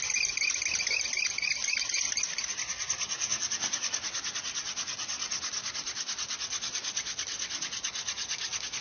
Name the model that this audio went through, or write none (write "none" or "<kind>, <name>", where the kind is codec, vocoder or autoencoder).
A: none